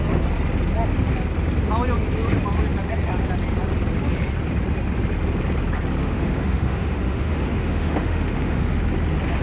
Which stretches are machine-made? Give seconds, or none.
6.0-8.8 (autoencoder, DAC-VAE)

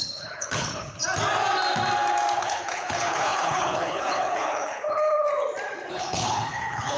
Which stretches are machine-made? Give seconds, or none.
0.0-1.0 (codec, HILCodec); 2.4-5.3; 5.9-7.0

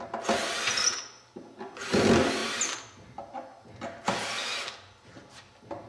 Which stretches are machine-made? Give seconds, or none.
none

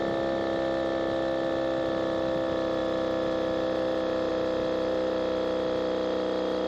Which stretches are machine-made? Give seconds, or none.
none

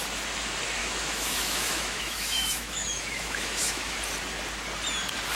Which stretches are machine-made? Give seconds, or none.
0.8-4.0 (autoencoder, DAC-VAE)